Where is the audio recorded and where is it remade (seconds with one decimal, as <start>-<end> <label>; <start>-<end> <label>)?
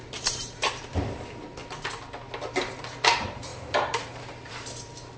0.0-1.6 remade; 1.6-2.5 recorded; 2.5-5.2 remade